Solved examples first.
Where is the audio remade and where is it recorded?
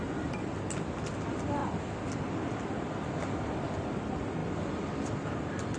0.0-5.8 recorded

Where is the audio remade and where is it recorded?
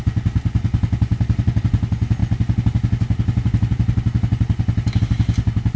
0.0-5.8 recorded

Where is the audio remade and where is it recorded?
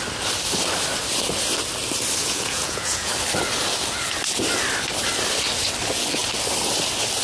0.0-2.2 recorded; 2.2-3.1 remade; 3.1-7.2 recorded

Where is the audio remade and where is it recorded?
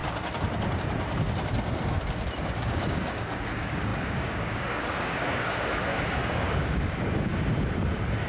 0.0-2.4 recorded; 2.4-7.3 remade; 7.3-8.3 recorded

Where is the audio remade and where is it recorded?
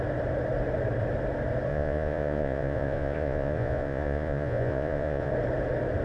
0.0-1.7 recorded; 1.7-5.3 remade; 5.3-6.0 recorded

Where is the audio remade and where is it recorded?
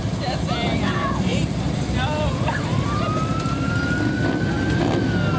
0.0-5.4 recorded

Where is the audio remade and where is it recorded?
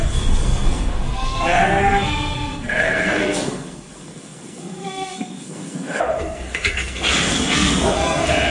0.0-8.5 remade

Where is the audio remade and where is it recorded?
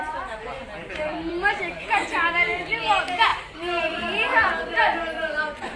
0.0-0.8 recorded; 0.8-1.6 remade; 1.6-5.8 recorded